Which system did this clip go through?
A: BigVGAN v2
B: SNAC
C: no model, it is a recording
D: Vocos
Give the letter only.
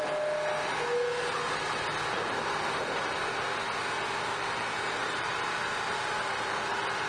C